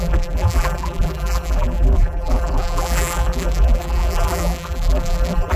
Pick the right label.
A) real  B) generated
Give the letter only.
B